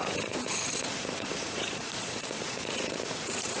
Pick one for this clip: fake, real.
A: fake